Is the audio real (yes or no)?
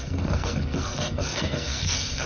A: no